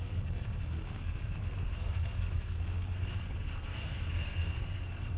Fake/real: fake